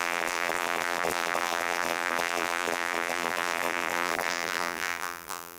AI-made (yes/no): yes